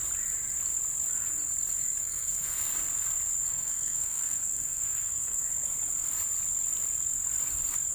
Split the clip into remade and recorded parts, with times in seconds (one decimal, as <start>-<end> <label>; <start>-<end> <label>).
0.0-2.0 recorded; 2.0-2.7 remade; 2.7-3.5 recorded; 3.5-5.5 remade; 5.5-7.9 recorded